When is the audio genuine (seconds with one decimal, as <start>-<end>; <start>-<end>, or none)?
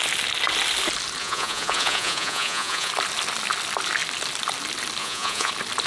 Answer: 0.0-1.2; 2.9-5.0; 5.5-5.9